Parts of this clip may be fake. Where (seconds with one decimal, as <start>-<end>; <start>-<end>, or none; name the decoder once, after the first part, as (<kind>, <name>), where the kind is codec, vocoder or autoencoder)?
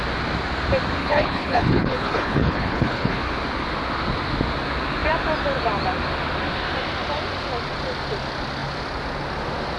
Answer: 1.0-3.2 (codec, HILCodec)